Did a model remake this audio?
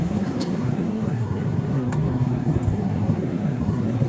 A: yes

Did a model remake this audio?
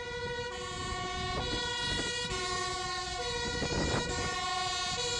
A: no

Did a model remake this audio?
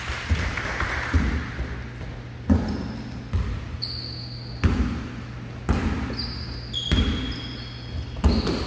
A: no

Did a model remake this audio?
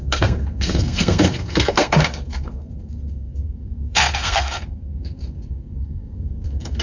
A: yes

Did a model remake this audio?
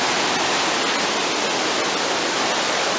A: no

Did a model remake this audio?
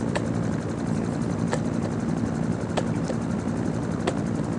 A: no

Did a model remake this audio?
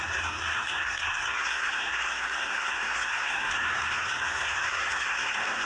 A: yes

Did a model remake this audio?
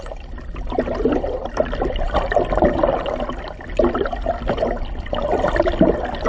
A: no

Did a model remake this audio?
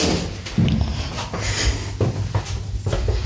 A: no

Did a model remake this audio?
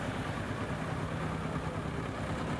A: no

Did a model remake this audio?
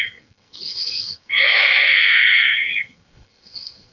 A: yes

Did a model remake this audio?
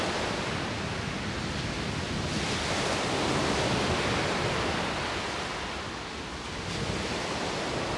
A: no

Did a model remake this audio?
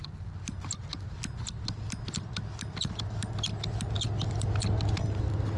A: no